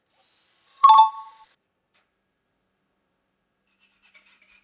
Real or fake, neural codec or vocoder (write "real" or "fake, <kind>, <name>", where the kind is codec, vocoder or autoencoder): fake, vocoder, BigVGAN v2